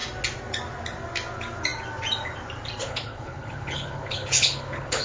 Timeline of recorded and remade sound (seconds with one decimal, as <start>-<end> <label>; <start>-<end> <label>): 0.0-2.8 recorded; 2.8-5.0 remade